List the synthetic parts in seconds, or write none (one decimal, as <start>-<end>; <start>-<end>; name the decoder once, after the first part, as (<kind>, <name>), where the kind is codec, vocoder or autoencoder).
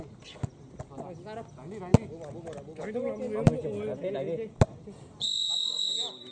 none